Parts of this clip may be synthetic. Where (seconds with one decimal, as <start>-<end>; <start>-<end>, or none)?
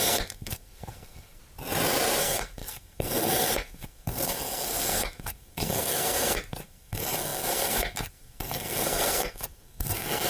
0.0-1.4; 2.2-10.3